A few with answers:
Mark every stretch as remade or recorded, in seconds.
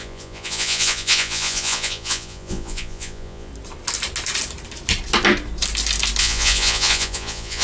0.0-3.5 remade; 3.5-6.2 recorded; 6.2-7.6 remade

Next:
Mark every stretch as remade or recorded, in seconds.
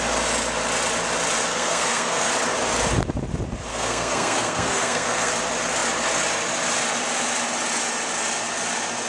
0.0-1.5 recorded; 1.5-2.3 remade; 2.3-3.7 recorded; 3.7-5.3 remade; 5.3-9.1 recorded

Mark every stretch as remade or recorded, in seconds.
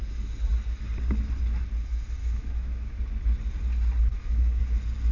0.0-2.2 recorded; 2.2-3.0 remade; 3.0-4.1 recorded; 4.1-4.6 remade; 4.6-5.1 recorded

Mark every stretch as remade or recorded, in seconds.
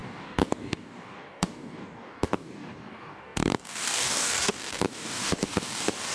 0.0-6.1 remade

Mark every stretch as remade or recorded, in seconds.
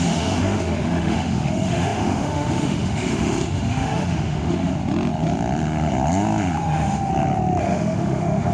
0.0-4.7 remade; 4.7-6.6 recorded; 6.6-7.1 remade; 7.1-7.6 recorded; 7.6-8.5 remade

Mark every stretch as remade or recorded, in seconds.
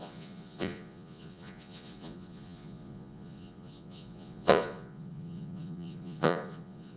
0.0-7.0 remade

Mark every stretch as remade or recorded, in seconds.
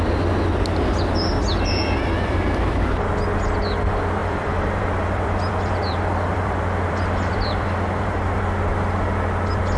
0.0-1.5 recorded; 1.5-3.1 remade; 3.1-4.2 recorded; 4.2-8.4 remade; 8.4-9.8 recorded